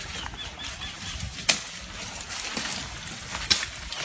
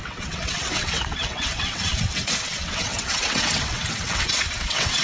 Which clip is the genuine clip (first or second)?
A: first